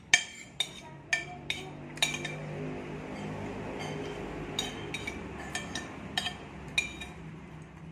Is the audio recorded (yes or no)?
yes